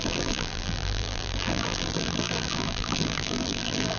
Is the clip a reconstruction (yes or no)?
yes